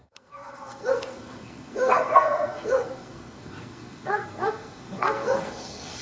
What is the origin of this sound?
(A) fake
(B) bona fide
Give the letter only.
A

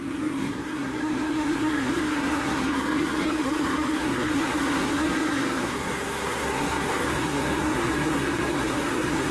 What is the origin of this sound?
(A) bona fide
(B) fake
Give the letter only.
B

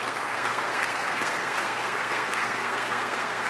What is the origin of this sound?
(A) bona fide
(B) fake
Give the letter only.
B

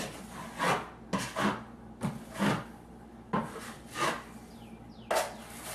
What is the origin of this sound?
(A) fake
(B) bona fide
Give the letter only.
B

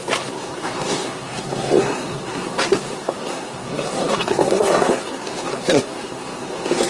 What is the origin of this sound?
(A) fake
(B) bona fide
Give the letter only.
A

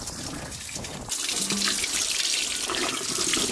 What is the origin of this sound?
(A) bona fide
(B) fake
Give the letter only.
A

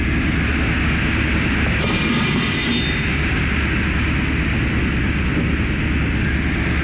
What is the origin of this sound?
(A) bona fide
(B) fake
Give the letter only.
A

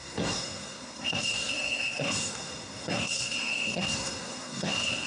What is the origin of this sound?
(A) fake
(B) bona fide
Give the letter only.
A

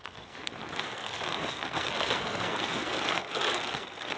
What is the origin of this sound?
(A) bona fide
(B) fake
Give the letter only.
B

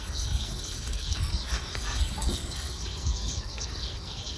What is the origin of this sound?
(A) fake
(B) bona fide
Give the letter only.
A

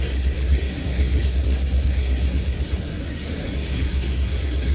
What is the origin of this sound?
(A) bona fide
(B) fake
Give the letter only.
B